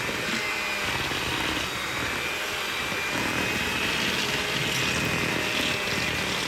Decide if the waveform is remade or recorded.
recorded